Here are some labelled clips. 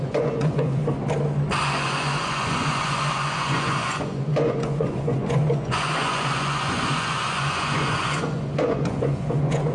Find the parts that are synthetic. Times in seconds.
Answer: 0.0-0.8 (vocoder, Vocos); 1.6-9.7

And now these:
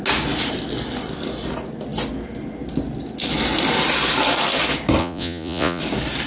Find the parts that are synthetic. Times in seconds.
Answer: 5.0-5.8 (vocoder, Vocos)

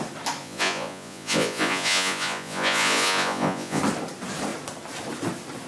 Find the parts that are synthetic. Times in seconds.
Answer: 0.4-3.8 (vocoder, Vocos)

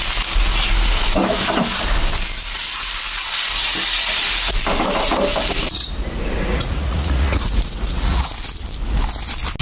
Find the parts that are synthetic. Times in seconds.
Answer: 6.5-8.3 (vocoder, Vocos)